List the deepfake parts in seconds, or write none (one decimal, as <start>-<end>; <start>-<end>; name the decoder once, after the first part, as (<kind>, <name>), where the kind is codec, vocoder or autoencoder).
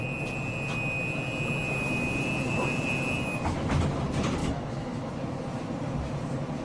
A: 4.4-5.1 (autoencoder, DAC-VAE)